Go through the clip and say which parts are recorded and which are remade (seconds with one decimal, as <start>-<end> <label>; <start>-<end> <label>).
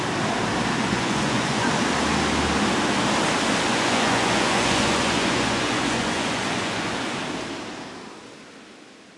0.0-0.8 recorded; 0.8-1.7 remade; 1.7-3.7 recorded; 3.7-7.2 remade; 7.2-9.2 recorded